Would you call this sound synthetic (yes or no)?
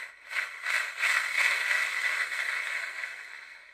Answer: yes